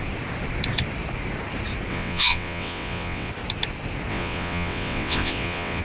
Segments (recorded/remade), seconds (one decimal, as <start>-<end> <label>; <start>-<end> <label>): 0.0-1.9 recorded; 1.9-3.3 remade; 3.3-4.1 recorded; 4.1-5.8 remade